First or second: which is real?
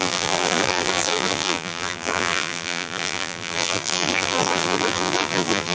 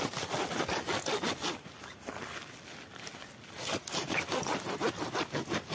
second